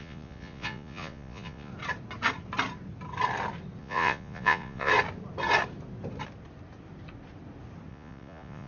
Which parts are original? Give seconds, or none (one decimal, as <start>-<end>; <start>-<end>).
1.7-3.8; 4.9-7.9